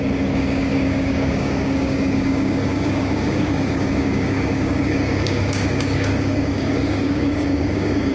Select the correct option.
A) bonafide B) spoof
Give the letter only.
B